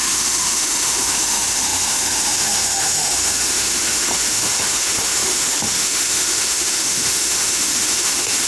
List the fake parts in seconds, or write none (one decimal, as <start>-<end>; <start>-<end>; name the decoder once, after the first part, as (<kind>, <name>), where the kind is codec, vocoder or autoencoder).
0.0-8.5 (autoencoder, DAC-VAE)